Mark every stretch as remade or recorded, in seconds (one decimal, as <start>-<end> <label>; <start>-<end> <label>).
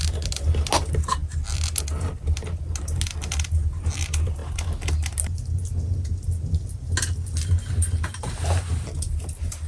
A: 0.0-9.7 recorded